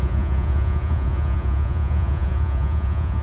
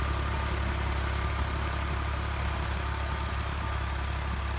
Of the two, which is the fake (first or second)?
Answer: first